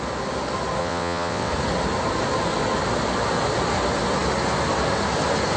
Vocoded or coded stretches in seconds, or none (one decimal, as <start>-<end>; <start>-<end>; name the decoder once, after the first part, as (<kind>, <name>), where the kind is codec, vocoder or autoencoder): 0.8-1.5 (vocoder, WaveNeXt)